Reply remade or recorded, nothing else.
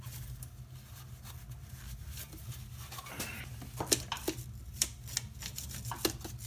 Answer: recorded